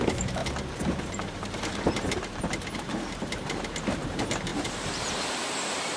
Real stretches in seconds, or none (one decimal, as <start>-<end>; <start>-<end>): 0.4-1.0